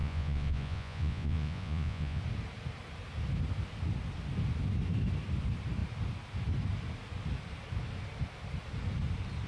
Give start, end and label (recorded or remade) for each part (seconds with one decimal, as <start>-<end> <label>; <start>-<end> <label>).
0.0-2.2 remade; 2.2-9.5 recorded